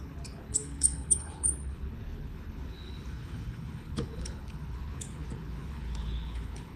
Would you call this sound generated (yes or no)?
yes